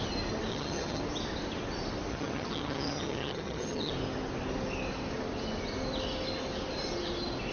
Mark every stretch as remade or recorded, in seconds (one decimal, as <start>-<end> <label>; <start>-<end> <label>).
0.0-0.5 recorded; 0.5-1.0 remade; 1.0-2.1 recorded; 2.1-3.9 remade; 3.9-7.5 recorded